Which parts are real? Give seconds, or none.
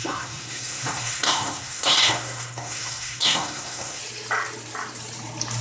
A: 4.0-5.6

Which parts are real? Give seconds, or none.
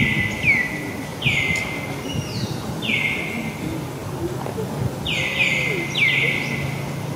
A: 0.0-7.2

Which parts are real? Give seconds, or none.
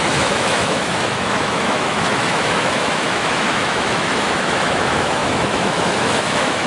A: none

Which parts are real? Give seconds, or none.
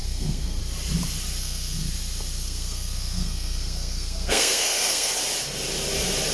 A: 0.6-1.4; 1.9-2.4; 5.1-6.3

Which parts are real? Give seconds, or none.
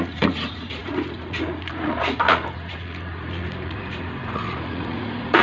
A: none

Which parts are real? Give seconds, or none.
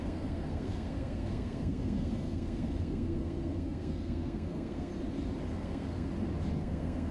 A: 4.9-5.5; 6.1-6.6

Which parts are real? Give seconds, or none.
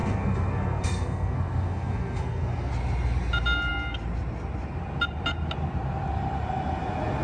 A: 2.7-7.2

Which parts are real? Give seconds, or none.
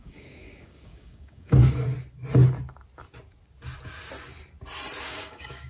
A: 1.6-5.0